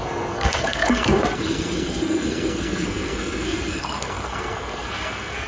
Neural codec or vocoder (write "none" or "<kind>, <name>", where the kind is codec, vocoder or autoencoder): codec, SNAC